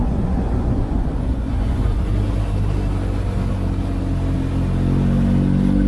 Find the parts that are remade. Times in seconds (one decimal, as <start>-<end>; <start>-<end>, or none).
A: 0.0-2.1